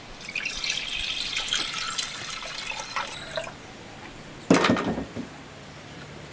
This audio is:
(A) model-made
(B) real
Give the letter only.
A